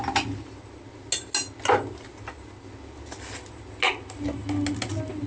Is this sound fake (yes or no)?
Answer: no